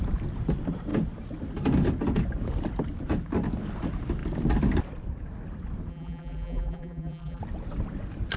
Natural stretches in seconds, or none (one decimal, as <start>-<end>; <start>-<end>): 0.0-5.9; 7.4-8.4